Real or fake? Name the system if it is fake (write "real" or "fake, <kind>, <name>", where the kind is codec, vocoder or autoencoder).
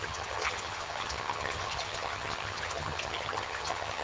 fake, vocoder, HiFi-GAN